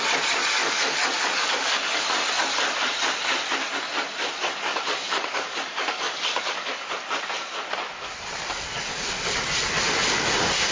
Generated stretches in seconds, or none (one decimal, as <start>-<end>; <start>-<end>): 0.6-2.0; 4.7-6.9